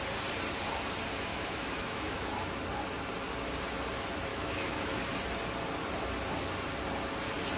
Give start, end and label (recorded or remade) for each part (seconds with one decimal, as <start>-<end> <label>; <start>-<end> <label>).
0.0-1.3 recorded; 1.3-2.5 remade; 2.5-4.3 recorded; 4.3-5.0 remade; 5.0-7.6 recorded